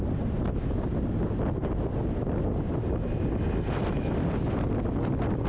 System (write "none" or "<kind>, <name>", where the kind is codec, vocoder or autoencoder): none